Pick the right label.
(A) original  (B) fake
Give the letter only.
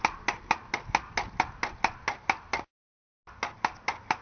A